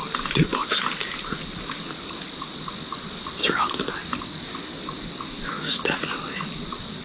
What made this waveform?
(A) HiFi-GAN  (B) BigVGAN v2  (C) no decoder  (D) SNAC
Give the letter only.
C